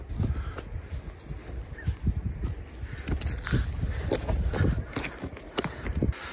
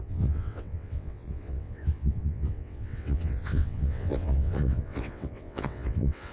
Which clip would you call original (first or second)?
first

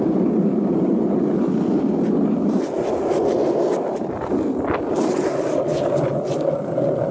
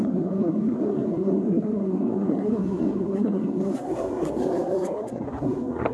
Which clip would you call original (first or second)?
first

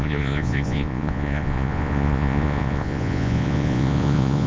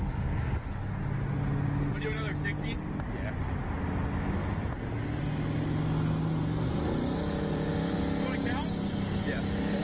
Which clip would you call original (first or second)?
second